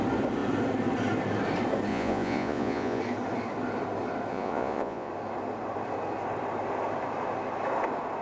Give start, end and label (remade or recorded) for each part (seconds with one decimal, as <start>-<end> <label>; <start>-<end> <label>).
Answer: 0.0-1.9 recorded; 1.9-3.0 remade; 3.0-4.3 recorded; 4.3-5.1 remade; 5.1-8.2 recorded